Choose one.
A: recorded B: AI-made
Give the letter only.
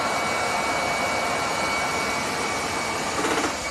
A